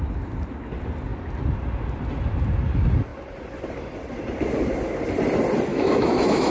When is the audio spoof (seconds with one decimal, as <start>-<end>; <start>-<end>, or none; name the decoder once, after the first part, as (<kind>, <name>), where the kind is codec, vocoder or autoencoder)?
5.7-6.5 (autoencoder, DAC-VAE)